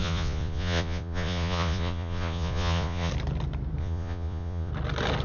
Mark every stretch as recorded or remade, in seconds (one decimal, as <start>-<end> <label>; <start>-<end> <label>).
0.0-3.1 remade; 3.1-3.8 recorded; 3.8-4.7 remade; 4.7-5.2 recorded